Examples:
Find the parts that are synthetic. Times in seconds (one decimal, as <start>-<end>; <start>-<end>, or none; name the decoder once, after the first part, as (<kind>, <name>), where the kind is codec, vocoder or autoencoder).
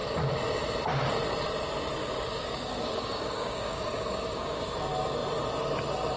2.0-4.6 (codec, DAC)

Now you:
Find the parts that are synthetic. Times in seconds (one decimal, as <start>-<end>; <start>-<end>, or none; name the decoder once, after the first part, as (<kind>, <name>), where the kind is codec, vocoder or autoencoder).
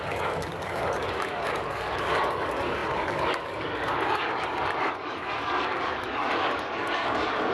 0.0-7.5 (codec, DAC)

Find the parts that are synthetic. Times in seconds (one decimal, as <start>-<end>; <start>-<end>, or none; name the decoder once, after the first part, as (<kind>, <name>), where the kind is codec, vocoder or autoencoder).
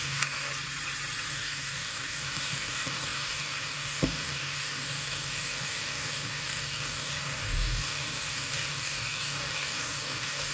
0.0-0.5 (codec, DAC); 1.3-10.5